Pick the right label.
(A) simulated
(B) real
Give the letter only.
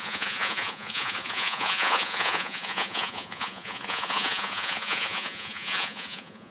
A